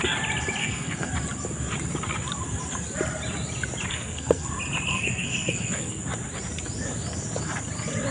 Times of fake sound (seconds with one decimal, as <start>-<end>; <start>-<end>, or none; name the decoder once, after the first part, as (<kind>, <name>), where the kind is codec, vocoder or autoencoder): 0.6-1.1 (codec, SNAC); 3.9-4.5; 4.9-6.0